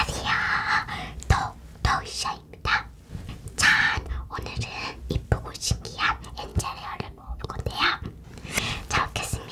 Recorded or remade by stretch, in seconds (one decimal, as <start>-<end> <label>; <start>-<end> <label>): 0.0-6.5 recorded; 6.5-7.5 remade; 7.5-9.5 recorded